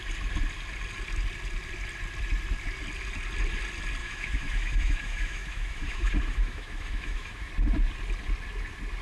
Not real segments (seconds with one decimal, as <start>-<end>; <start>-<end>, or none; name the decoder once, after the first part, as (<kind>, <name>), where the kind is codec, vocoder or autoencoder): 4.0-7.5 (autoencoder, DAC-VAE)